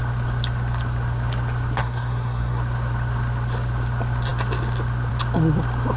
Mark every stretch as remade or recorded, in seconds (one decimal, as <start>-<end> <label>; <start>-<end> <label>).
0.0-1.8 recorded; 1.8-2.6 remade; 2.6-6.0 recorded